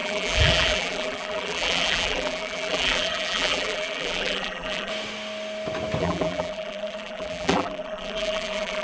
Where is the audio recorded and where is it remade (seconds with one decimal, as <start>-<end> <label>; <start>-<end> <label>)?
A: 0.0-4.9 remade; 4.9-6.0 recorded; 6.0-8.8 remade